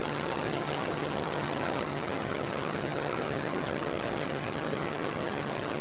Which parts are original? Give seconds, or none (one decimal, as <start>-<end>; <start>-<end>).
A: none